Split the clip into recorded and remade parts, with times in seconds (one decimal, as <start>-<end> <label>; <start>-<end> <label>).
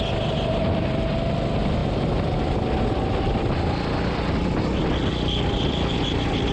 0.0-6.5 recorded